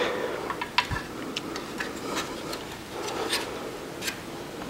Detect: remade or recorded recorded